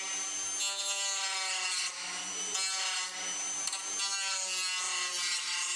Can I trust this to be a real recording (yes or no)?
yes